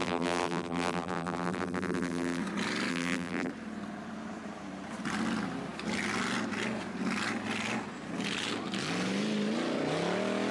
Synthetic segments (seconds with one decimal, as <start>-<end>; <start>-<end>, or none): 0.0-2.4; 2.9-3.5